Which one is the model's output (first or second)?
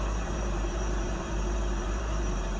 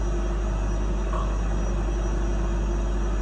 first